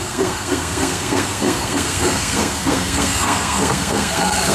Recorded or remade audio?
remade